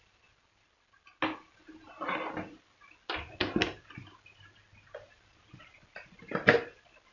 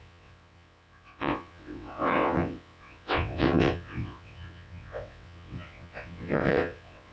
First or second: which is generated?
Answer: second